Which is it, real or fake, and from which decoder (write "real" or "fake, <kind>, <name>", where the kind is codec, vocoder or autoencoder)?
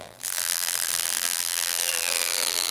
fake, vocoder, BigVGAN v2